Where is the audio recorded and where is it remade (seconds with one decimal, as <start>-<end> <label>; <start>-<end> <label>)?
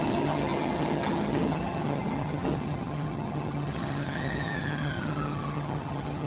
0.0-6.3 remade